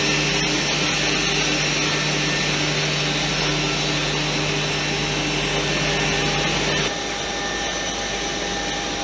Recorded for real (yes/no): yes